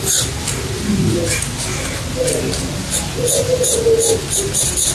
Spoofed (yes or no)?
no